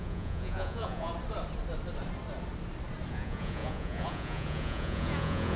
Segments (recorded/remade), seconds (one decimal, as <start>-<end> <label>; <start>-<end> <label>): 0.0-1.1 remade; 1.1-3.1 recorded; 3.1-5.6 remade